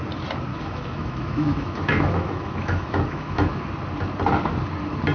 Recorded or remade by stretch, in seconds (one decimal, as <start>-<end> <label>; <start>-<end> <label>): 0.0-0.5 recorded; 0.5-3.6 remade; 3.6-5.1 recorded